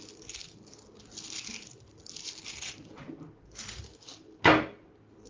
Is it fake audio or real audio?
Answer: real